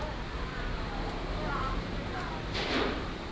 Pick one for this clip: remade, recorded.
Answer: recorded